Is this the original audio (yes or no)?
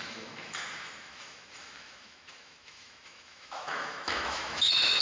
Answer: no